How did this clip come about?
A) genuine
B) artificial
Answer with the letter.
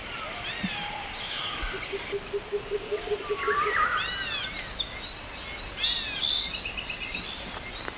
A